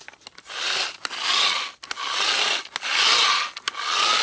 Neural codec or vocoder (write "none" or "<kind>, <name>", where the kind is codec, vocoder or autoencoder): none